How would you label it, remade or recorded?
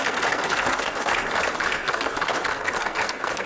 remade